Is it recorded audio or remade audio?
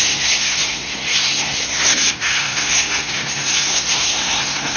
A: remade